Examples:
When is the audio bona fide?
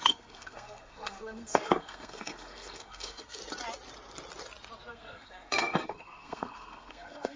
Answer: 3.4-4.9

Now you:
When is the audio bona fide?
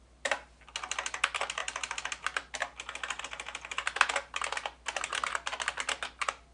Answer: 0.0-6.5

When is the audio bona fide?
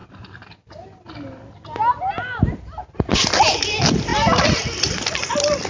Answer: 0.0-5.7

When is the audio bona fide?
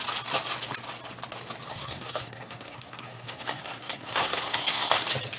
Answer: 0.0-1.7; 4.9-5.4